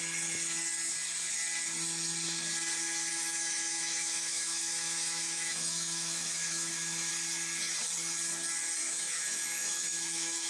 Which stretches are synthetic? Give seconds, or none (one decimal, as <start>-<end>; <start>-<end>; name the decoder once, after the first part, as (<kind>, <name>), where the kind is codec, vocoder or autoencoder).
3.1-7.1 (autoencoder, DAC-VAE); 8.8-10.5